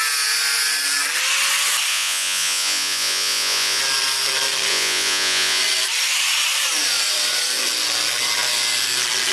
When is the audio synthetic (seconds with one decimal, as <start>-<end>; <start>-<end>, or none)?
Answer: 1.9-3.8; 4.7-5.6